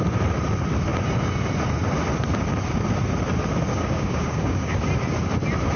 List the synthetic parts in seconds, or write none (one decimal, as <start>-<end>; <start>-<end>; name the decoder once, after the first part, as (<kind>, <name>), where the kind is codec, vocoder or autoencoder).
3.7-4.8 (codec, DAC)